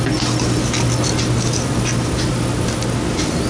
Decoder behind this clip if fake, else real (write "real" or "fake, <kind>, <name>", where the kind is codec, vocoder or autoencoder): real